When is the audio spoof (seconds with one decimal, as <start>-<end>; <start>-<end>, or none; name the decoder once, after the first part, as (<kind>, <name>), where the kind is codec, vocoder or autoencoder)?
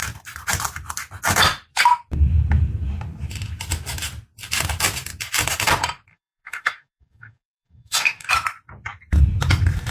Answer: 6.1-8.3 (codec, DAC)